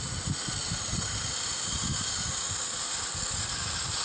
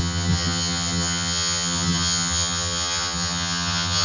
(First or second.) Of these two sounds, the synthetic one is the second